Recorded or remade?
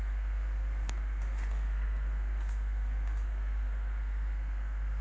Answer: remade